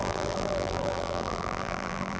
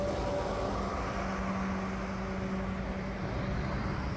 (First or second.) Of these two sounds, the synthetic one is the first